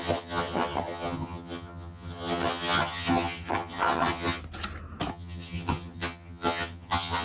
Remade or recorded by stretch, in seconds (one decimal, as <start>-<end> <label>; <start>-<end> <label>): 0.0-4.4 remade; 4.4-5.1 recorded; 5.1-7.2 remade